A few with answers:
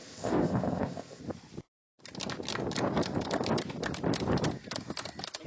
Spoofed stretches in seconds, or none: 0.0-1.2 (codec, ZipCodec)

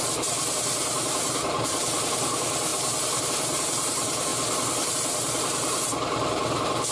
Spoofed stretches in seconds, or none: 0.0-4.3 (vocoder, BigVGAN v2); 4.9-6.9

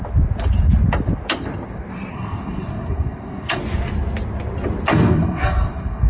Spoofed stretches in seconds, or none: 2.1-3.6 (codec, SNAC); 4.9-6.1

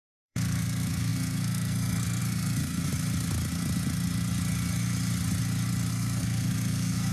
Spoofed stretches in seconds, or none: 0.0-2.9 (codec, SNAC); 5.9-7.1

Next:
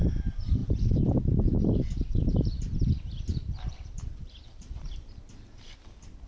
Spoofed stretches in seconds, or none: 0.6-1.1 (vocoder, BigVGAN v2); 3.3-5.0

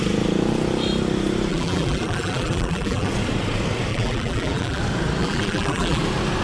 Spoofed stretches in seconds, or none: 1.5-3.1 (vocoder, BigVGAN v2); 3.9-4.8; 5.2-6.0